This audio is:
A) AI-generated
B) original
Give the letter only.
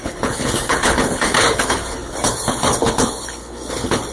A